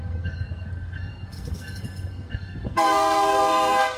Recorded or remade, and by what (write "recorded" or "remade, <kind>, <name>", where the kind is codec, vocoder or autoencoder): remade, codec, SNAC